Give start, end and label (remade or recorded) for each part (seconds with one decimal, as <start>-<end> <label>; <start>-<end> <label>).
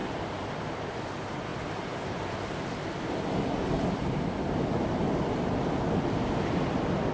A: 0.0-7.1 recorded